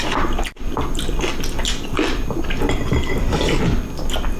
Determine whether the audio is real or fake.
real